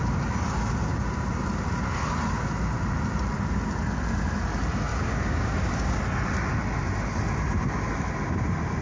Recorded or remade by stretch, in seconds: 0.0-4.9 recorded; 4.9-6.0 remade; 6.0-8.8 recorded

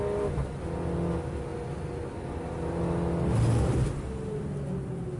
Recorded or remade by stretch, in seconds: 0.0-5.2 recorded

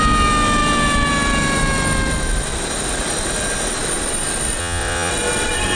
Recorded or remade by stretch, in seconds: 0.0-4.6 recorded; 4.6-5.1 remade; 5.1-5.8 recorded

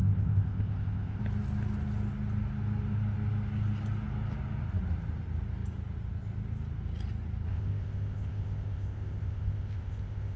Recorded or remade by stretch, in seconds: 0.0-1.2 remade; 1.2-7.5 recorded; 7.5-10.4 remade

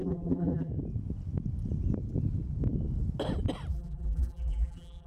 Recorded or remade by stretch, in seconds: 0.0-0.7 remade; 0.7-3.7 recorded; 3.7-5.1 remade

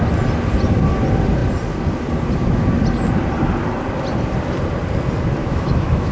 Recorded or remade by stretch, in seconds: 0.0-5.4 recorded; 5.4-6.1 remade

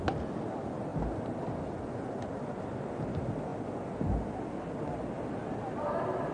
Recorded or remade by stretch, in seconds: 0.0-6.3 recorded

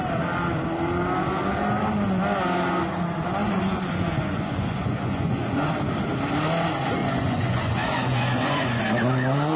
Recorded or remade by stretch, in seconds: 0.0-3.4 recorded; 3.4-5.7 remade; 5.7-7.0 recorded; 7.0-8.8 remade; 8.8-9.6 recorded